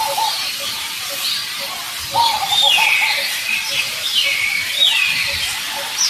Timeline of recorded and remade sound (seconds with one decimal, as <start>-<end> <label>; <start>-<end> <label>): 0.0-6.1 remade